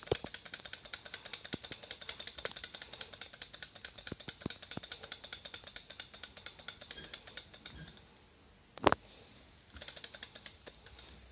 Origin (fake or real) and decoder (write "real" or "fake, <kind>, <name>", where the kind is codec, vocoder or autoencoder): real